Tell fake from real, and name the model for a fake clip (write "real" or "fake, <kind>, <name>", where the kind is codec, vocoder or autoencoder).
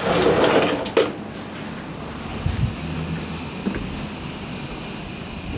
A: real